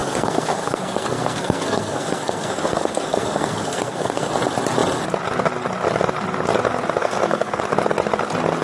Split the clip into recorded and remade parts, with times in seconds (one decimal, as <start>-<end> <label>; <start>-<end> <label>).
0.0-4.3 remade; 4.3-7.0 recorded; 7.0-7.6 remade; 7.6-8.6 recorded